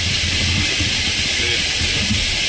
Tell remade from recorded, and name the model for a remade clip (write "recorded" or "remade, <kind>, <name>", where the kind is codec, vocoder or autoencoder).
recorded